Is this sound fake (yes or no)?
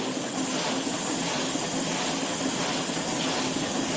no